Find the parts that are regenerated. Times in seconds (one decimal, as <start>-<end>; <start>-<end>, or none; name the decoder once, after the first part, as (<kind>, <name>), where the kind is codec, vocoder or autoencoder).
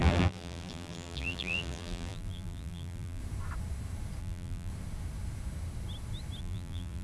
0.0-3.2 (vocoder, BigVGAN v2); 4.2-4.7; 6.4-7.0